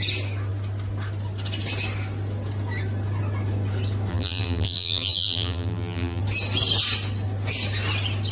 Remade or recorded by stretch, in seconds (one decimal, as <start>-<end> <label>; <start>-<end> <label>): 0.0-4.1 recorded; 4.1-6.2 remade; 6.2-8.3 recorded

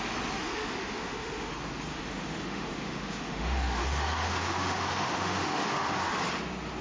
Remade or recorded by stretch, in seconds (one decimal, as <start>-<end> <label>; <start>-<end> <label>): 0.0-0.4 recorded; 0.4-1.5 remade; 1.5-1.9 recorded; 1.9-6.0 remade; 6.0-6.8 recorded

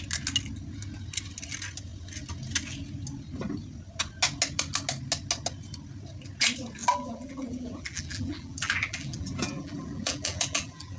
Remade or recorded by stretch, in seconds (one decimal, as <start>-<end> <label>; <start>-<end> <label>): 0.0-6.8 recorded; 6.8-11.0 remade

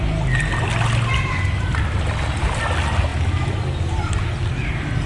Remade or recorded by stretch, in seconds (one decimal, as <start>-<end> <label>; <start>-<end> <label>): 0.0-5.1 recorded

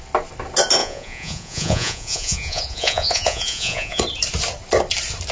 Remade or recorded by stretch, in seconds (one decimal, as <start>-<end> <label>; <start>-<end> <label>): 0.0-0.8 recorded; 0.8-4.0 remade; 4.0-5.3 recorded

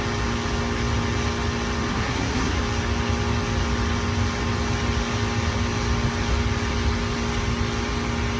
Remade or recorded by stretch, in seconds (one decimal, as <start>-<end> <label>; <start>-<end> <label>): 0.0-1.9 recorded; 1.9-2.6 remade; 2.6-8.4 recorded

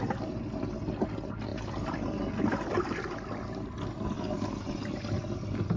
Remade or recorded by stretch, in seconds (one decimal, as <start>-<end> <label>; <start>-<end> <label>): 0.0-5.8 recorded

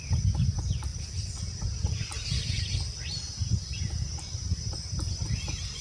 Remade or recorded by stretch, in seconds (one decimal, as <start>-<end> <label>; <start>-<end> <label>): 0.0-5.8 recorded